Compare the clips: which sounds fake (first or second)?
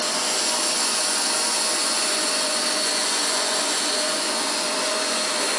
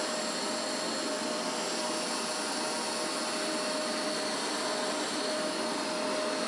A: first